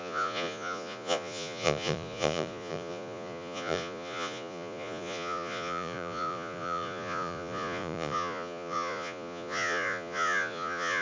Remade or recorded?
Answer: remade